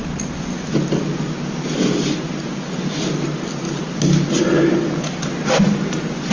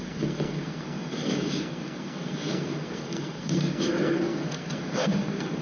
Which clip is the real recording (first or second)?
first